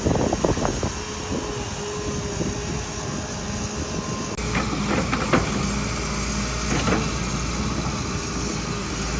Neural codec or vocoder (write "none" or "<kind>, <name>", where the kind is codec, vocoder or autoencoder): none